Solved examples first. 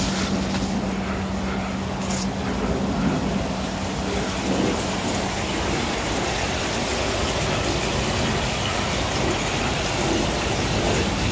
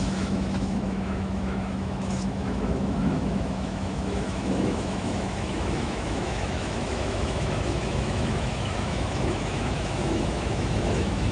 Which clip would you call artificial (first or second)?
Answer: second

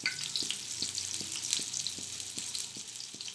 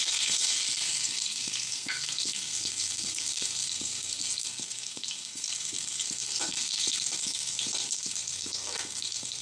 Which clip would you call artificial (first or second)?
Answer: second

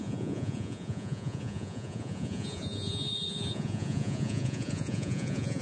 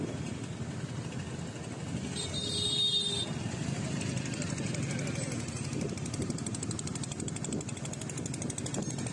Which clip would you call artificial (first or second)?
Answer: first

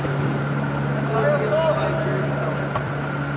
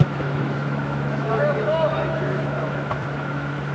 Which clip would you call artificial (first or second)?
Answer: second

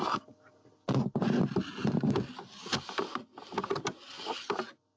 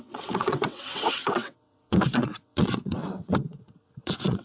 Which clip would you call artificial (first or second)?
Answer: second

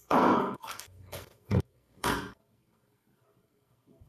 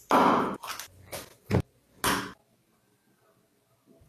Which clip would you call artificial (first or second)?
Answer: first